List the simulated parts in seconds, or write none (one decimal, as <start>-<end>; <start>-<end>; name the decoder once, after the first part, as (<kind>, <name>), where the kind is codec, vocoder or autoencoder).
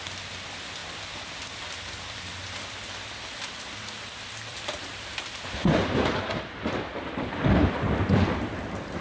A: 4.5-8.6 (vocoder, BigVGAN v2)